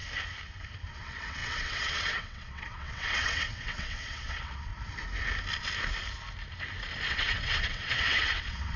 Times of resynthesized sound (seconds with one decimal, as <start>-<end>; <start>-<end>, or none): 0.9-4.7; 7.1-8.8